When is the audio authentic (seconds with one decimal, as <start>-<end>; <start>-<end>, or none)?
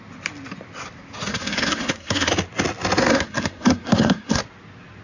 0.0-1.3; 2.3-3.0; 4.4-5.0